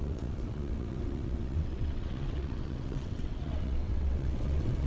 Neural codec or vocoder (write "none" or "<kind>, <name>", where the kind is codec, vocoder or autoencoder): vocoder, WaveNeXt